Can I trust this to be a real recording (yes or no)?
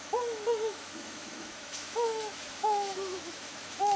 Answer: no